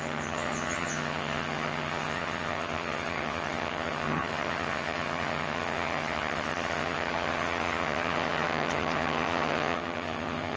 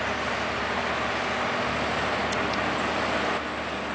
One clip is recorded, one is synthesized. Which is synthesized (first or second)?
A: first